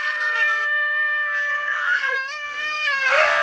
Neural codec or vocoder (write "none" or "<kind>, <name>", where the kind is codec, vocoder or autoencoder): codec, SNAC